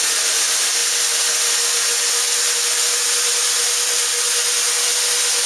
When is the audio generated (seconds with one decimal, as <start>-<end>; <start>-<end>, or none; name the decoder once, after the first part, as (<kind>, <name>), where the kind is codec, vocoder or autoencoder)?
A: none